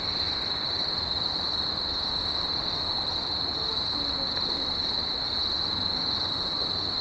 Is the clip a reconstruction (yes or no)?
no